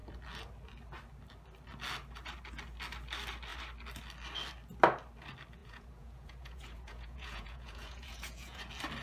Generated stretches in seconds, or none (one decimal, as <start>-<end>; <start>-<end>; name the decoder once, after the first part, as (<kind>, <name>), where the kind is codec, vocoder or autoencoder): 5.6-8.6 (vocoder, Vocos)